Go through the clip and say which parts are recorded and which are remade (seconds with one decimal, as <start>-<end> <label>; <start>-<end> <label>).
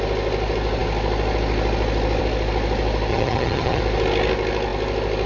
0.0-3.1 recorded; 3.1-3.8 remade; 3.8-5.3 recorded